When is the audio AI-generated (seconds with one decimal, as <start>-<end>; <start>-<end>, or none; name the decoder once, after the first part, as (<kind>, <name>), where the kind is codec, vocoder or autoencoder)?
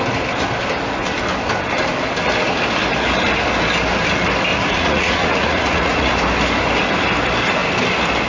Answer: 4.5-6.1 (vocoder, Vocos)